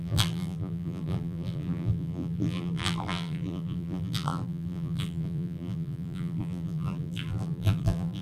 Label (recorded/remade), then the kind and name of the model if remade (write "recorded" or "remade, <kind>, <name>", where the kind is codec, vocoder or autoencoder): remade, vocoder, BigVGAN v2